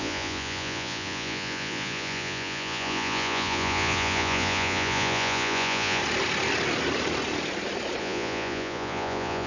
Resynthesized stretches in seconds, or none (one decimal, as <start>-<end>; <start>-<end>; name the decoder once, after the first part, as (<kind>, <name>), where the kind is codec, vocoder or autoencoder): 0.0-6.0 (vocoder, Vocos); 8.0-9.5

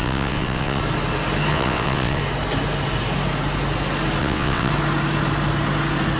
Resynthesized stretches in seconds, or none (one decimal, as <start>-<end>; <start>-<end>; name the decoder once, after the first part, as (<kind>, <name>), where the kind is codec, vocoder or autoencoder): 0.0-0.8 (vocoder, WaveNeXt); 1.5-2.2; 4.2-4.7

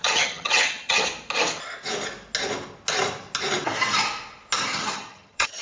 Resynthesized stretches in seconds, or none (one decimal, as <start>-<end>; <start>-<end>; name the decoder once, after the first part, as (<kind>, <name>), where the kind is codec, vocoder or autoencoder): 0.0-1.0 (vocoder, HiFi-GAN); 4.7-5.6

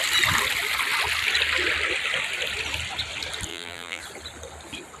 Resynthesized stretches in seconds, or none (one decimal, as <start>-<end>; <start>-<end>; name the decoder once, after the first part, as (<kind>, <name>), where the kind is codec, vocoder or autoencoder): 3.5-4.0 (vocoder, BigVGAN v2)